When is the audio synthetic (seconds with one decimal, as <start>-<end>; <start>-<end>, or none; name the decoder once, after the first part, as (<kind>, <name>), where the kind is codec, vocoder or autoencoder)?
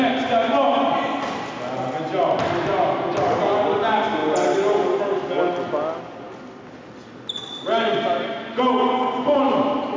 none